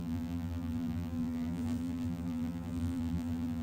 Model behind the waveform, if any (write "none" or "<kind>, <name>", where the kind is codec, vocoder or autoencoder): vocoder, BigVGAN v2